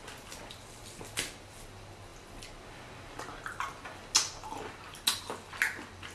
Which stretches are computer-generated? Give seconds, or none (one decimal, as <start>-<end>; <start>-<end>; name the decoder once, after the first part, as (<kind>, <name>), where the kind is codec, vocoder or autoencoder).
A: none